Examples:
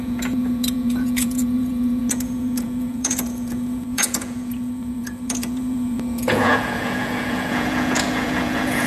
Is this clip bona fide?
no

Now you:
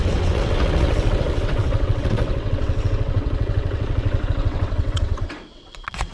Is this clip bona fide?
no